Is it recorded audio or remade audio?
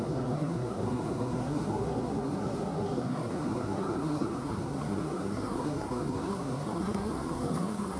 remade